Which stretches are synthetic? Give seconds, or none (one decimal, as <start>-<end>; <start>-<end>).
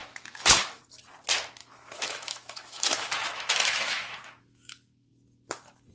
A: 0.0-0.8; 1.6-5.1